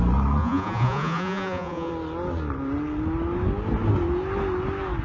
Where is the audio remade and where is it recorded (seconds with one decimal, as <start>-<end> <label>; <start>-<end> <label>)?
0.0-0.4 recorded; 0.4-1.9 remade; 1.9-5.0 recorded